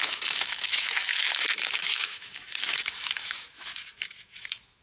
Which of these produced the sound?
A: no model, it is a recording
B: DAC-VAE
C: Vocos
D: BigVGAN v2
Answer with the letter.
B